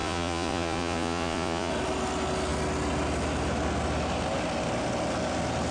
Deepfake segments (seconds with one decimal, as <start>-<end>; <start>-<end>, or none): 0.0-1.7